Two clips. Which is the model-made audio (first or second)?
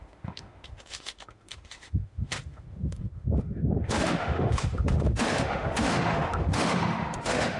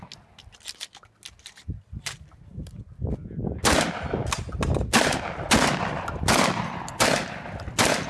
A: first